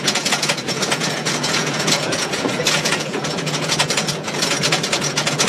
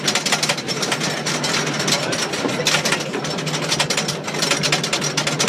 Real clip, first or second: second